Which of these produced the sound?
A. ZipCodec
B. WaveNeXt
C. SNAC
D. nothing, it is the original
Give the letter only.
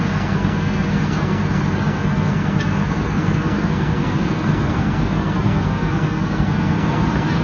C